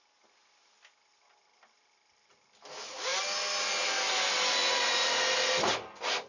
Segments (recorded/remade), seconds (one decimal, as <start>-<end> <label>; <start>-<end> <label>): 0.0-6.3 recorded